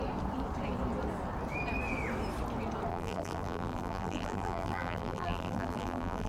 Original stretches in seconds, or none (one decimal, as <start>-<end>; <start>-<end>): 0.0-2.9